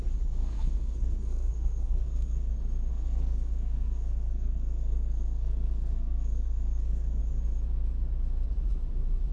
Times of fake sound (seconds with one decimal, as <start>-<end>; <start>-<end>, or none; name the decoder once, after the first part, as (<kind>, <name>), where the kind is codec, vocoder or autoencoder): 0.4-2.5 (codec, SNAC); 2.9-7.2